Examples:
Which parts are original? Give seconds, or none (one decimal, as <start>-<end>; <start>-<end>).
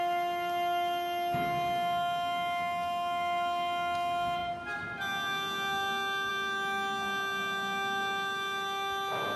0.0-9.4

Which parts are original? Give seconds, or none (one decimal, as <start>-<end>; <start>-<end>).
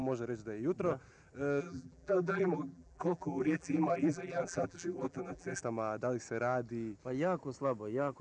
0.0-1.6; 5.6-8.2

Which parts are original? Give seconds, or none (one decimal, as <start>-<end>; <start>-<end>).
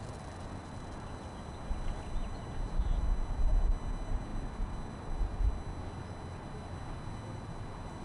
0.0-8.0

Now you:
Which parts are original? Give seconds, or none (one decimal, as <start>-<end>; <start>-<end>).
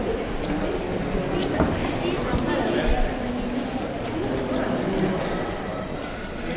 0.0-6.6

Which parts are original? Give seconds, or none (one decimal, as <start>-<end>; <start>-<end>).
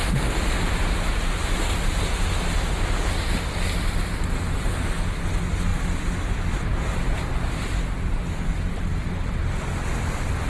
0.0-6.7; 7.7-10.5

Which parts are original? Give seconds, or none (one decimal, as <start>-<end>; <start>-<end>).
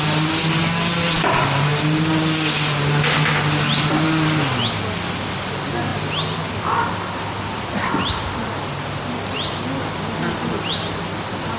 none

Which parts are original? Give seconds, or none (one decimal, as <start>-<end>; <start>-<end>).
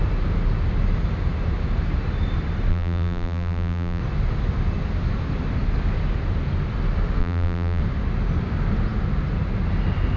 0.0-2.7; 4.0-7.2; 7.8-10.2